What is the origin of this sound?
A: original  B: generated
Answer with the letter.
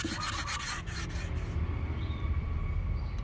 A